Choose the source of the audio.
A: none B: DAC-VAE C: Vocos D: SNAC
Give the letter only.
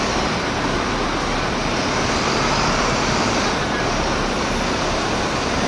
A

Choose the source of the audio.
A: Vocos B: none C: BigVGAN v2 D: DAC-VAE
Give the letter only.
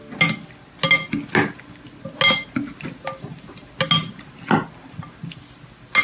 B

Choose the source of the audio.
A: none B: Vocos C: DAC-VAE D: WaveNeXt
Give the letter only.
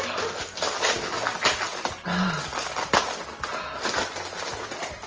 A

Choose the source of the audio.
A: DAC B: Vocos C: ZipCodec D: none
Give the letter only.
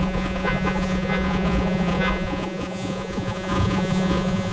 B